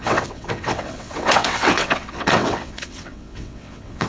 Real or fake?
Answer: fake